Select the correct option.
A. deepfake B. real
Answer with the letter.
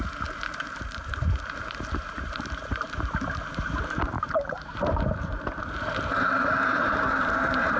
A